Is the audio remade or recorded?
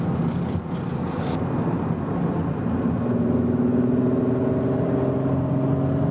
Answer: recorded